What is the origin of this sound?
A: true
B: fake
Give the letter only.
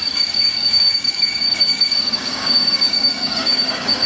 B